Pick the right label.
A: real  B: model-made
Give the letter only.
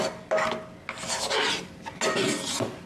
A